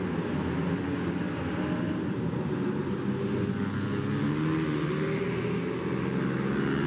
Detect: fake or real real